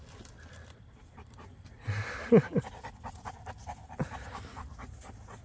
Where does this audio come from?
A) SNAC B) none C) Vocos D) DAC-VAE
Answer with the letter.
B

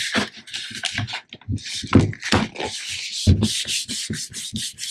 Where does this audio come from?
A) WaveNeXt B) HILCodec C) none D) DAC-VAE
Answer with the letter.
C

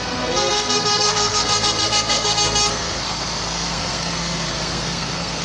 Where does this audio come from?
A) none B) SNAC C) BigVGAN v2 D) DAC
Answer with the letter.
B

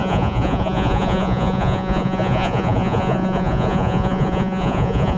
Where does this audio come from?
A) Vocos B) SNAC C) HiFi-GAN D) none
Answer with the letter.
A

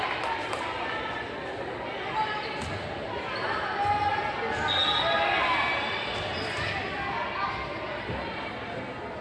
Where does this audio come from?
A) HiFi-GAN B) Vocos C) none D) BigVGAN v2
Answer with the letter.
C